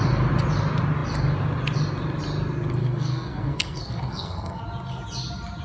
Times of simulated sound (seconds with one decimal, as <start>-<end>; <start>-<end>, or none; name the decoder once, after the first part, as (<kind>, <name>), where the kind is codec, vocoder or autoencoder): 2.8-4.6 (codec, SNAC)